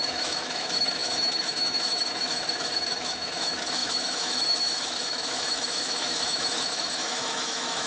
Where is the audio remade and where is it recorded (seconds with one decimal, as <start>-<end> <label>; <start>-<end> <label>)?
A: 0.0-7.9 remade